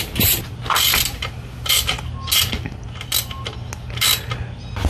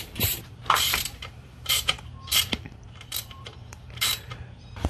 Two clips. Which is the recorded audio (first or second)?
first